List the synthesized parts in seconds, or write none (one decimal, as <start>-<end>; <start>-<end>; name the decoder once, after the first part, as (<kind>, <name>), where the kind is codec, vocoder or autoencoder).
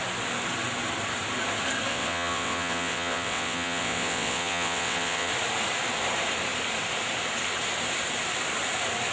1.9-5.3 (vocoder, WaveNeXt)